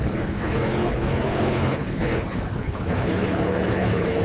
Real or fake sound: fake